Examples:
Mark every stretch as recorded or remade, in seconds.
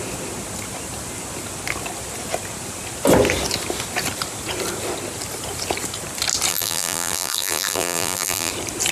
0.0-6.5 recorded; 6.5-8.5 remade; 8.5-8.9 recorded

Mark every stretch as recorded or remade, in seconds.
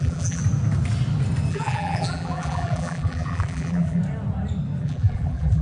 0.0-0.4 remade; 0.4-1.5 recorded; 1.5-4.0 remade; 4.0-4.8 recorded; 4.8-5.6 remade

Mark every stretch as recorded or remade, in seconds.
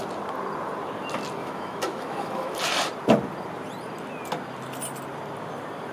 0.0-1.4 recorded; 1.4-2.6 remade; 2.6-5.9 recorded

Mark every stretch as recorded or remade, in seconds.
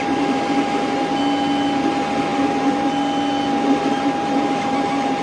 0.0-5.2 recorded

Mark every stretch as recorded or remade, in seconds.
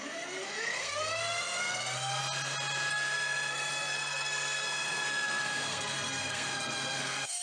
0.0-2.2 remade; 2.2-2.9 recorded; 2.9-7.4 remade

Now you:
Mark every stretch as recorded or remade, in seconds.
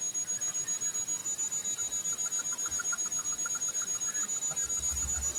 0.0-5.4 recorded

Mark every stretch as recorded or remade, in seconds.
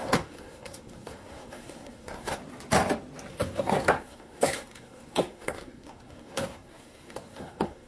0.0-2.4 remade; 2.4-3.3 recorded; 3.3-7.9 remade